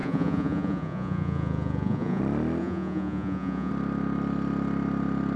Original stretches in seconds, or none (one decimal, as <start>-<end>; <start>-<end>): 2.2-2.6; 3.7-5.4